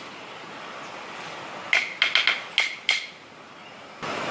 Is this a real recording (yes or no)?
yes